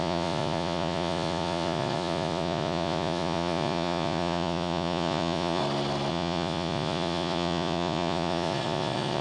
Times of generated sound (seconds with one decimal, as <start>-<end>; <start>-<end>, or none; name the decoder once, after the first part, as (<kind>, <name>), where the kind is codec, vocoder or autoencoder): 0.0-5.6 (vocoder, Vocos); 6.1-9.2

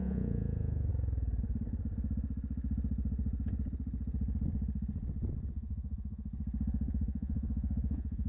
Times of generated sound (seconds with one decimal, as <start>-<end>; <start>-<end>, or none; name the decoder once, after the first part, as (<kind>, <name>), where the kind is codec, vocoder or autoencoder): 0.0-0.9 (vocoder, Vocos); 5.5-6.3; 6.9-8.3

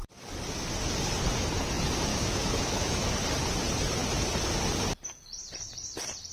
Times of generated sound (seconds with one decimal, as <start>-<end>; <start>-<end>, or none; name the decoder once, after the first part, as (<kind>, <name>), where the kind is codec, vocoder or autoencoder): 2.1-3.1 (autoencoder, DAC-VAE)

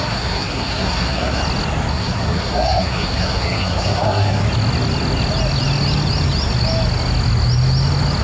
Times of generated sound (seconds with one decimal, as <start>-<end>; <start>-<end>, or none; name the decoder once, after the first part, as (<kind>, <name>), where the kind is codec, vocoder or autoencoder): 0.0-1.4 (codec, SNAC); 1.9-4.4

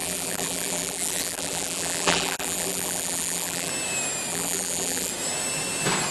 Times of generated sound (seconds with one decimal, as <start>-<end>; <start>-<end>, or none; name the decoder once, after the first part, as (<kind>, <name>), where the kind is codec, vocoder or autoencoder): 0.0-3.7 (vocoder, BigVGAN v2); 4.3-5.1

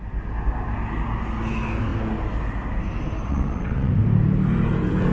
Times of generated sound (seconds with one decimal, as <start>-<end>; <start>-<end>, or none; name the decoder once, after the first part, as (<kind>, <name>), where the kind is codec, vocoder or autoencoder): 3.3-3.9 (vocoder, WaveNeXt)

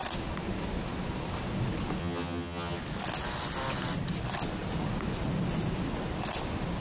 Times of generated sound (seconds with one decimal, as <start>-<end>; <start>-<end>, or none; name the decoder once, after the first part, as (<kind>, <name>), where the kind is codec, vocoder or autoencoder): 2.0-2.8 (vocoder, HiFi-GAN)

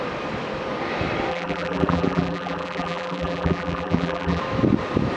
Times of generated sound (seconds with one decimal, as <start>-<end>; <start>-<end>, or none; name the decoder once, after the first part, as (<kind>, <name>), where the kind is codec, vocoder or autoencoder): 1.3-4.4 (vocoder, BigVGAN v2)